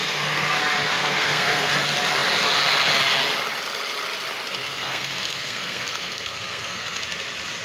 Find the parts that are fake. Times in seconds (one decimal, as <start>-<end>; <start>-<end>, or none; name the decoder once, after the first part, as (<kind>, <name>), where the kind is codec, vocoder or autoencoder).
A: 0.0-0.6 (codec, SNAC); 1.0-1.7; 4.6-7.0